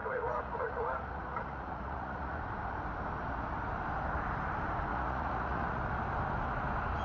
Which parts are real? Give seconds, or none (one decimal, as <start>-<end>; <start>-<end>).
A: 2.4-4.9; 5.8-7.0